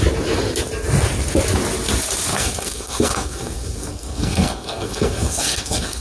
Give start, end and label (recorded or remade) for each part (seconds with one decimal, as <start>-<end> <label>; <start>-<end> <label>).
0.0-2.3 recorded; 2.3-6.0 remade